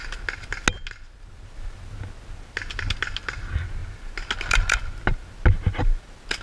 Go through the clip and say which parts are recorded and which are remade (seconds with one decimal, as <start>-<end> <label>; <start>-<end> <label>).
0.0-6.4 recorded